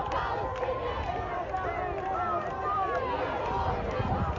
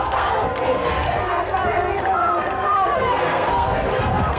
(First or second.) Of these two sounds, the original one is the first